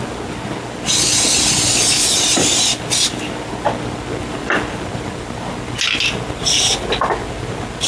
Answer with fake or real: real